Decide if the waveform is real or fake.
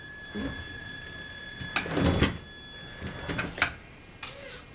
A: real